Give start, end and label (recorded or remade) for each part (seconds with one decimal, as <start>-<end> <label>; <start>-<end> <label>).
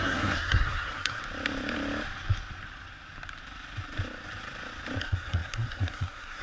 0.0-1.2 remade; 1.2-5.0 recorded; 5.0-6.4 remade